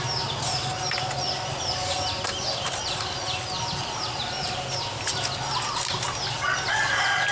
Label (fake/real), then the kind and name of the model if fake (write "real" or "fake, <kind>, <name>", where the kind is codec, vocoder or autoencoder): real